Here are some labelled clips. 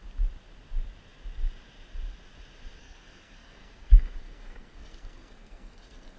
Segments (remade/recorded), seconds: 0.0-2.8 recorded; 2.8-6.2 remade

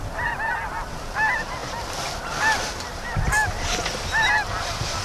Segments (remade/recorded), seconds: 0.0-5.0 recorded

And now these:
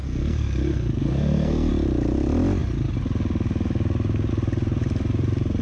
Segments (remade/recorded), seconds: 0.0-1.7 remade; 1.7-5.6 recorded

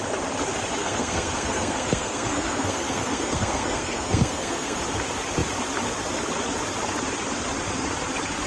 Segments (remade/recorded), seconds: 0.0-0.8 recorded; 0.8-4.8 remade; 4.8-8.5 recorded